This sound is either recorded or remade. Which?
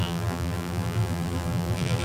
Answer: remade